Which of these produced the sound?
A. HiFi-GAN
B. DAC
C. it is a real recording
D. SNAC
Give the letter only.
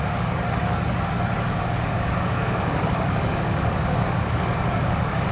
B